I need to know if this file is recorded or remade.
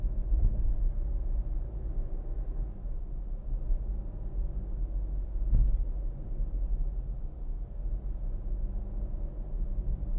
recorded